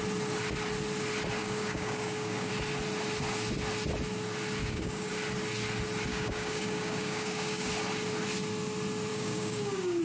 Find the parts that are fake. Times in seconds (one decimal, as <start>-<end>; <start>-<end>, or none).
1.4-2.5; 4.6-5.1; 6.1-7.7; 9.1-10.0